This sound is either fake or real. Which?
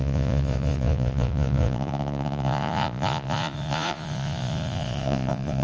fake